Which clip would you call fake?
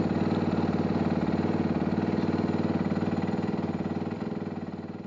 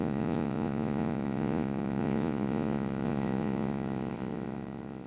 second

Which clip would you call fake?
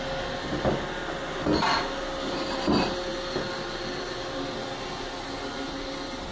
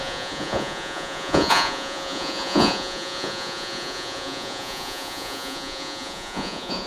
second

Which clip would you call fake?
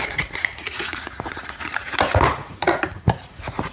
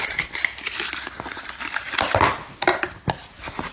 first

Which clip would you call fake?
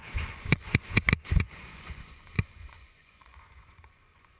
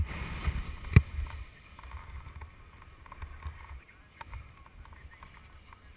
first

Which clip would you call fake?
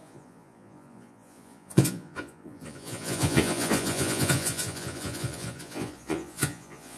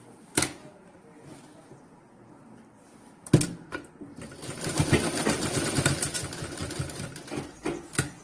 first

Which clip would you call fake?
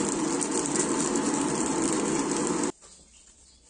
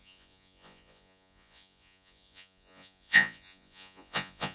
second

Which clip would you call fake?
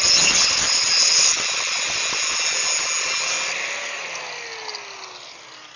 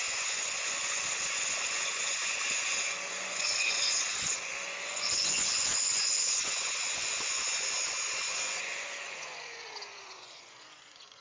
second